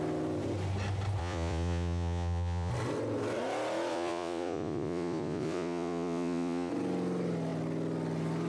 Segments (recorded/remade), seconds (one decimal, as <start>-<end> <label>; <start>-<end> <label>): 0.0-1.2 recorded; 1.2-2.7 remade; 2.7-3.9 recorded; 3.9-6.7 remade; 6.7-8.5 recorded